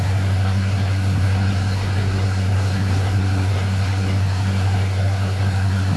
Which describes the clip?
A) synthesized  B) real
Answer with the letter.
A